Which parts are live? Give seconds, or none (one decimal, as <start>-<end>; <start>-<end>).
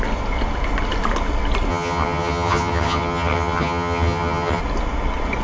0.0-1.7; 4.6-5.4